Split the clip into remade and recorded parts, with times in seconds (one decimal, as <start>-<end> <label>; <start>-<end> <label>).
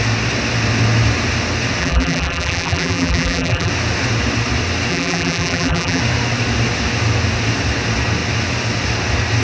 0.0-1.8 recorded; 1.8-3.7 remade; 3.7-4.9 recorded; 4.9-6.0 remade; 6.0-9.4 recorded